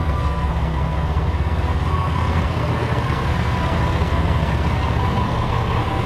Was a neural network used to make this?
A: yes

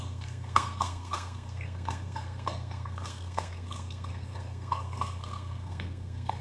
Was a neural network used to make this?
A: yes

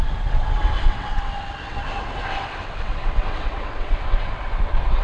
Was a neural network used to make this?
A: yes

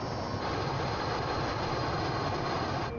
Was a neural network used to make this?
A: no